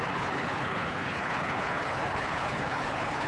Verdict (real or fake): fake